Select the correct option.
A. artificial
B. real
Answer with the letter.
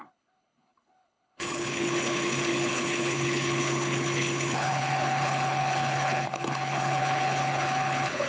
A